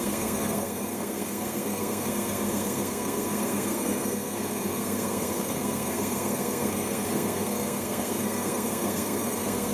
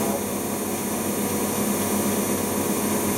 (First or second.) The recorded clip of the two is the second